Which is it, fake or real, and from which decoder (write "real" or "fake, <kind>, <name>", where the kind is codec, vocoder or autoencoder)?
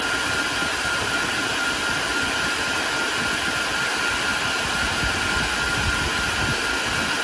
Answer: real